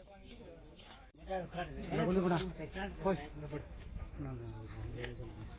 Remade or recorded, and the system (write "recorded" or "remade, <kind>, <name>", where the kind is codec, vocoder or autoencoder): remade, codec, DAC